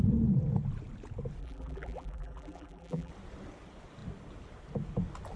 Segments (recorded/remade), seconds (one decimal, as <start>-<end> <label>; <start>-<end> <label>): 0.0-1.4 recorded; 1.4-3.1 remade; 3.1-5.4 recorded